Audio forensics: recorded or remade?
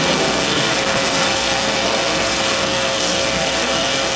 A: remade